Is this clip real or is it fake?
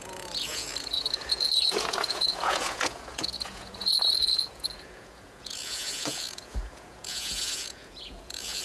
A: fake